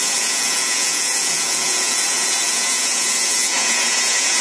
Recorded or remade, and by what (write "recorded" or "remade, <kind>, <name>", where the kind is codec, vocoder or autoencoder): remade, vocoder, Vocos